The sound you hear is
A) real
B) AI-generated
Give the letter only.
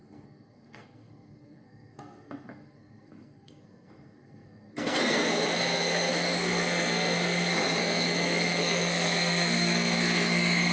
B